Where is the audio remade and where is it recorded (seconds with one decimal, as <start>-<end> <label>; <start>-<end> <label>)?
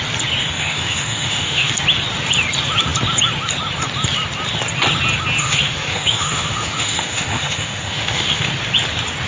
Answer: 0.0-0.4 recorded; 0.4-1.7 remade; 1.7-5.4 recorded; 5.4-8.5 remade; 8.5-9.3 recorded